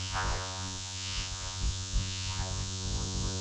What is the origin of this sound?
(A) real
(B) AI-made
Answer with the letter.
B